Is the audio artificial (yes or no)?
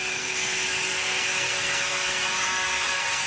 yes